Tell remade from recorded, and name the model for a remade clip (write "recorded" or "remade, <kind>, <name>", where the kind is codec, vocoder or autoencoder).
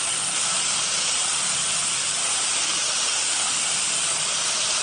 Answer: recorded